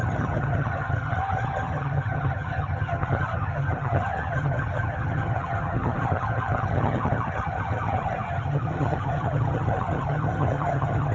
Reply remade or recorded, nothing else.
remade